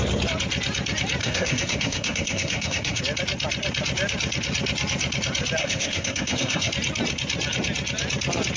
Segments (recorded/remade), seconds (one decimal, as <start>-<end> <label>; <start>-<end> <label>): 0.0-1.2 recorded; 1.2-3.0 remade; 3.0-5.6 recorded; 5.6-6.7 remade; 6.7-8.6 recorded